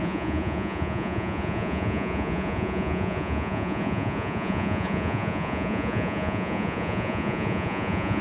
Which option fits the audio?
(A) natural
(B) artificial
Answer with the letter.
B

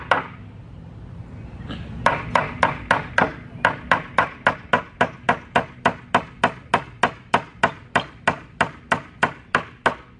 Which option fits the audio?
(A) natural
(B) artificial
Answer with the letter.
A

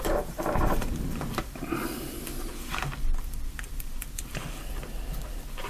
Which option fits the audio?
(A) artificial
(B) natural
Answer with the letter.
A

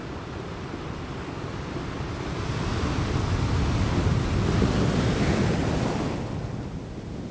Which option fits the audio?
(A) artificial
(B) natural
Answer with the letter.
B